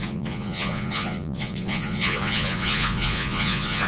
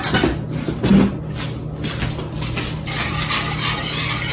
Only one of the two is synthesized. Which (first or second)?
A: first